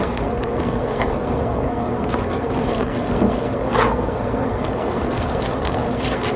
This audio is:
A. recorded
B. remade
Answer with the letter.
B